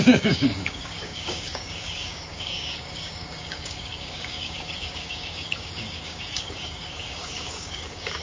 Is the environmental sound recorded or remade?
remade